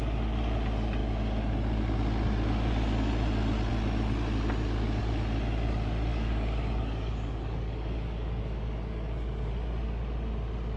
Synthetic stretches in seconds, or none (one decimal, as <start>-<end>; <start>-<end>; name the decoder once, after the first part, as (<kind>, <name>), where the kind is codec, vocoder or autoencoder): 6.1-9.5 (codec, DAC)